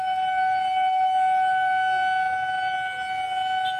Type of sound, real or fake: real